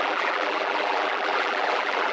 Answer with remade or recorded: remade